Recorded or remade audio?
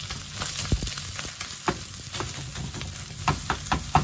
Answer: recorded